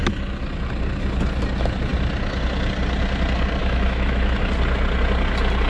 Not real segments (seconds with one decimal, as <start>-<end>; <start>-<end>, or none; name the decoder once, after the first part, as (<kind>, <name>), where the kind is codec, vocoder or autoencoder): 3.6-4.4 (autoencoder, DAC-VAE)